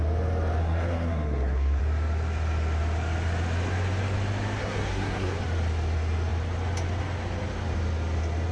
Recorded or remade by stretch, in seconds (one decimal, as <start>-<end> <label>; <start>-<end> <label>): 0.0-0.6 recorded; 0.6-1.8 remade; 1.8-4.6 recorded; 4.6-5.4 remade; 5.4-8.5 recorded